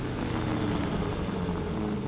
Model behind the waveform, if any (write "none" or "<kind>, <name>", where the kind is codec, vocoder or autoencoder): none